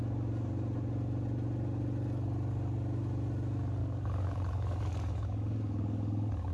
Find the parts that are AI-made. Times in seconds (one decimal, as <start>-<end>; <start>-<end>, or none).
3.8-6.5